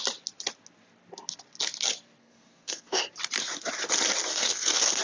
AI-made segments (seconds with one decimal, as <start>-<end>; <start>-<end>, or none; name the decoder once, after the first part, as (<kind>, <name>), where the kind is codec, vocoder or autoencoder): 2.2-3.0 (codec, SNAC); 4.3-5.0